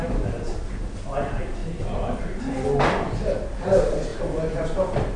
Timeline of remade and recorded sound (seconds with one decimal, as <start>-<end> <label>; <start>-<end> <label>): 0.0-5.2 recorded